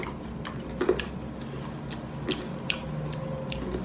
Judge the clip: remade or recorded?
recorded